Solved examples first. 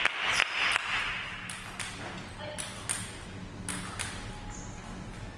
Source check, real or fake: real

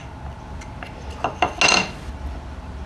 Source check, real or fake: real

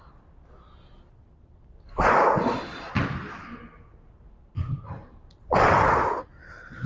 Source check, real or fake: real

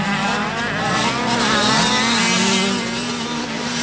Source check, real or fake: real